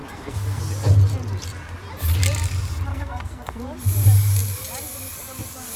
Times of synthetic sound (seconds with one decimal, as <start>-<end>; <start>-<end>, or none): 0.0-0.6; 2.9-3.6